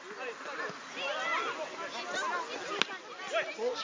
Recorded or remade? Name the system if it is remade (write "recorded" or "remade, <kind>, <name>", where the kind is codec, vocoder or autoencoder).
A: recorded